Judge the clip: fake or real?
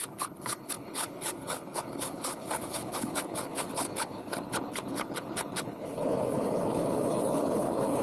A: fake